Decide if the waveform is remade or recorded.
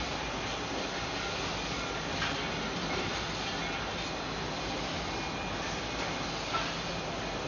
recorded